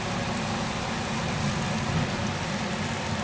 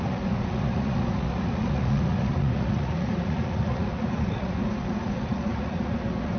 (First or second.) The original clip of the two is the first